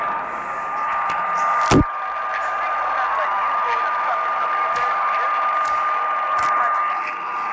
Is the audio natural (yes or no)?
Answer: yes